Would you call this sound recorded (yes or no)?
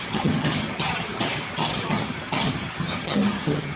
no